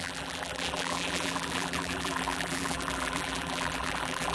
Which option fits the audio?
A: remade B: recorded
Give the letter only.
A